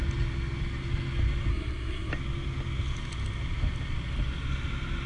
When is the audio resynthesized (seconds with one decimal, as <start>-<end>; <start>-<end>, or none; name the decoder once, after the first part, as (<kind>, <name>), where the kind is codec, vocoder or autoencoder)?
1.5-2.1 (codec, SNAC)